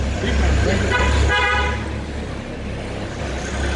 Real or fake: real